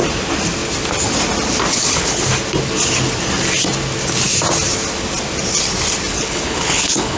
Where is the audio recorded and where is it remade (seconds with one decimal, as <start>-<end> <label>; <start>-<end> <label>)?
0.0-1.7 recorded; 1.7-2.2 remade; 2.2-6.1 recorded; 6.1-7.2 remade